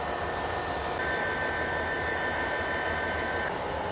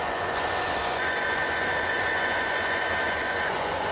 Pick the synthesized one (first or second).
second